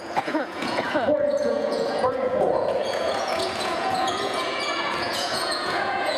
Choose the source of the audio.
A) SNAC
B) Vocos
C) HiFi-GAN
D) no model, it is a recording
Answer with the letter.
B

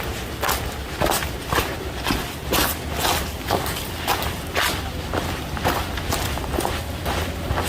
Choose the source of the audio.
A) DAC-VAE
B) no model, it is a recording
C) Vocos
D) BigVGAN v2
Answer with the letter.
B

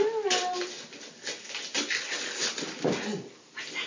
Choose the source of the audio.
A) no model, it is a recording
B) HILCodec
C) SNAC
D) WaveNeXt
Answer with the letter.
A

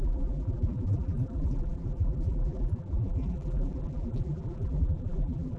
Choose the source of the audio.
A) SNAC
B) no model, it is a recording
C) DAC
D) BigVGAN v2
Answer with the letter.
D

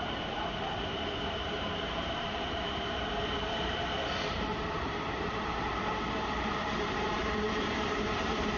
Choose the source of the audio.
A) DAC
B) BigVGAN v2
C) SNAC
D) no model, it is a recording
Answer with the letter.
B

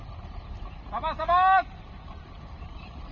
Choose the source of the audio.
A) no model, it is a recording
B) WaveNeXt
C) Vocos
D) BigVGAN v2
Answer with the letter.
A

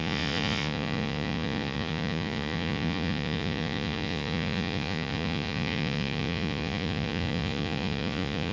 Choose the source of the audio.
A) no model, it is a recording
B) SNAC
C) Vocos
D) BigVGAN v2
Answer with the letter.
C